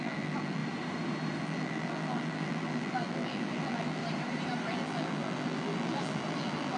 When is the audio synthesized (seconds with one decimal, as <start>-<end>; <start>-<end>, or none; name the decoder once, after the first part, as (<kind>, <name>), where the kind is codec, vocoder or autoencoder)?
0.0-0.6 (vocoder, BigVGAN v2); 1.4-4.0; 4.7-6.8